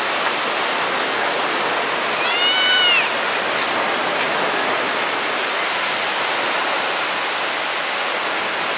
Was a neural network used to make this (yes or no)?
no